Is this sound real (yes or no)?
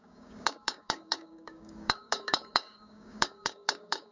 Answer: no